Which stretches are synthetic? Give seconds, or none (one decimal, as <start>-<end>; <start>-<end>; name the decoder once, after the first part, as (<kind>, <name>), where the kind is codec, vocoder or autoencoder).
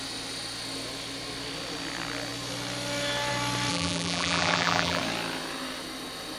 3.7-5.0 (vocoder, BigVGAN v2)